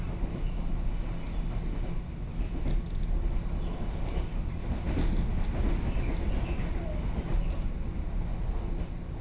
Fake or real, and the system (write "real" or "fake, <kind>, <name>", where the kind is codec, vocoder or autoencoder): real